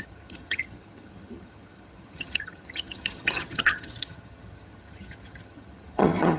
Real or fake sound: fake